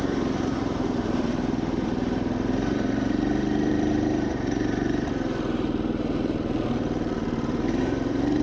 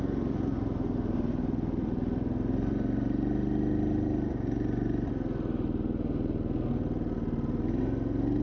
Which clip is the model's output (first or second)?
first